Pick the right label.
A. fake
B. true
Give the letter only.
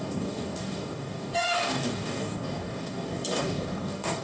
A